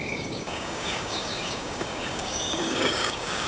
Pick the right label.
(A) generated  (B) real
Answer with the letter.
A